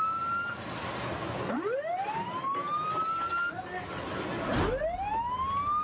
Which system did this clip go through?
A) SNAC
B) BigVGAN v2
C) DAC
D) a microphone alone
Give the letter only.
D